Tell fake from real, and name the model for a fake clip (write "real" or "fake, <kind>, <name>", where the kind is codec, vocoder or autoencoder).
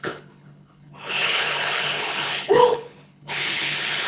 fake, codec, HILCodec